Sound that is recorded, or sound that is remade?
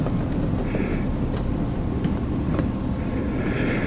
remade